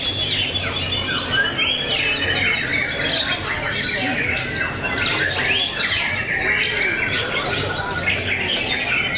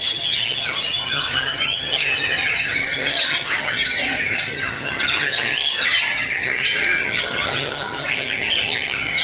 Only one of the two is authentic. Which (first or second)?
first